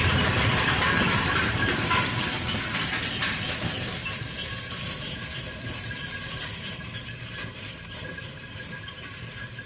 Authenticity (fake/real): fake